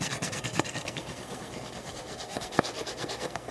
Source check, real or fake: fake